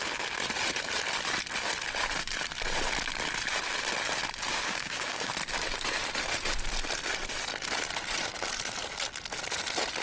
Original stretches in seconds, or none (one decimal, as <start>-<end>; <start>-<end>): 0.0-4.5; 5.3-10.0